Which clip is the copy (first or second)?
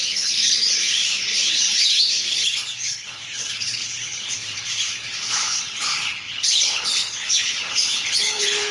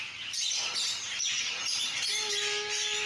first